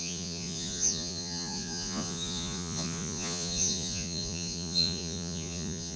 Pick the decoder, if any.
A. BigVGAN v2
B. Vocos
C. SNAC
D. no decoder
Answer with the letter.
B